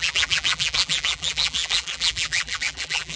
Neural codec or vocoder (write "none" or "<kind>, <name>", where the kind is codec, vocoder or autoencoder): vocoder, BigVGAN v2